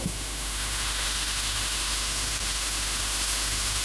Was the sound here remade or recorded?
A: remade